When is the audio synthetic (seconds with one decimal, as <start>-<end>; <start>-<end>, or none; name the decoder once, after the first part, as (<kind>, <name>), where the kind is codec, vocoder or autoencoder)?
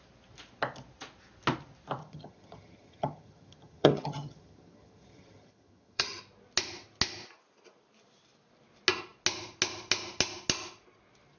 2.0-6.2 (vocoder, HiFi-GAN)